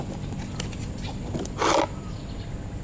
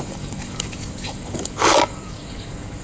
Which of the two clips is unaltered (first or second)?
first